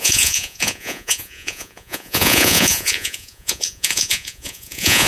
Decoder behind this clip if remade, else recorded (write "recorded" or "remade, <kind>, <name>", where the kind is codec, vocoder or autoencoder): remade, vocoder, Vocos